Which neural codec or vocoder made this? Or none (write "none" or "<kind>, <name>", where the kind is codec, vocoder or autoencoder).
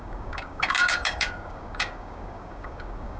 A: codec, DAC